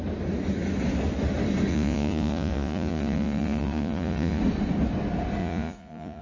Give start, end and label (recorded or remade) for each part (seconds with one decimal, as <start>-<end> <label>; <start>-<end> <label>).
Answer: 0.0-1.7 recorded; 1.7-4.4 remade; 4.4-5.4 recorded; 5.4-6.2 remade